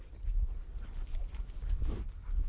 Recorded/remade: recorded